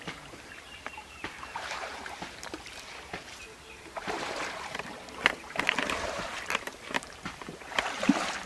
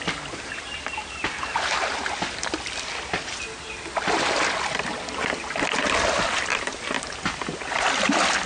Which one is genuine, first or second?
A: second